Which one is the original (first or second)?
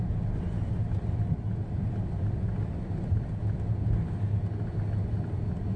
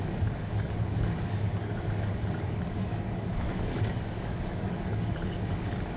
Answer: first